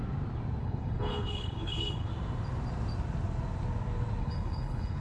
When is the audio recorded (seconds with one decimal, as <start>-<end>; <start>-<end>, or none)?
0.0-0.6; 2.1-4.2